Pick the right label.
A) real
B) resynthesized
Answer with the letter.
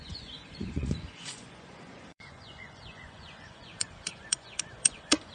B